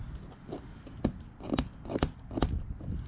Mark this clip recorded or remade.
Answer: recorded